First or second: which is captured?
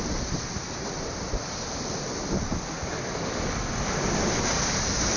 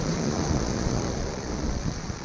first